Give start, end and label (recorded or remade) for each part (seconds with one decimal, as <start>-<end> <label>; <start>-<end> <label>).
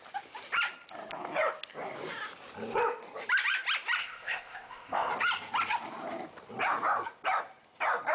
0.0-4.0 recorded; 4.0-5.1 remade; 5.1-8.1 recorded